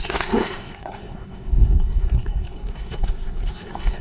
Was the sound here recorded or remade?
remade